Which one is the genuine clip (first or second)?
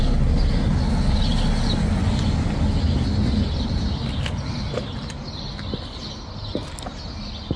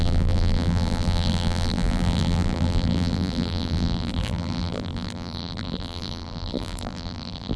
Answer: first